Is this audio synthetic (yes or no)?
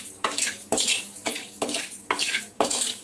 yes